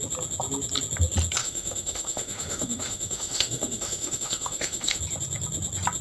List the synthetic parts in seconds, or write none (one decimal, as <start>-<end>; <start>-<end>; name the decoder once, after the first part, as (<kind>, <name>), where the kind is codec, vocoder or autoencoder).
1.4-5.0 (autoencoder, DAC-VAE)